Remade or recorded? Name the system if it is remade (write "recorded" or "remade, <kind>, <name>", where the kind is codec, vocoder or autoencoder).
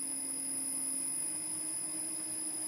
recorded